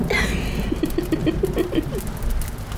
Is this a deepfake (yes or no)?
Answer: no